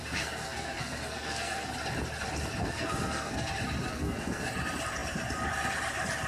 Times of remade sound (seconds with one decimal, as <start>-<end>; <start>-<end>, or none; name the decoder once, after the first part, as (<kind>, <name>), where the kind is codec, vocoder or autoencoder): 0.0-1.7 (codec, SNAC); 2.6-3.5; 3.9-4.5